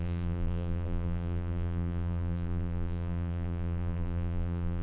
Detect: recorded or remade remade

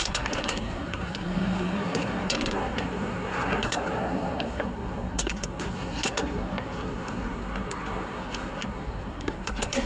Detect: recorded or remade remade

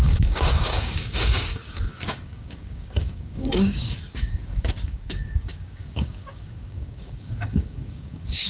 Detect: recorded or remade remade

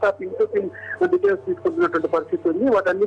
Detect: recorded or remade recorded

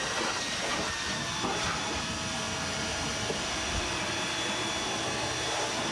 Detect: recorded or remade recorded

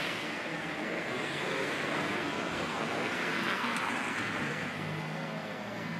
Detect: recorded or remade remade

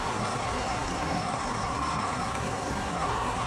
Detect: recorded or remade remade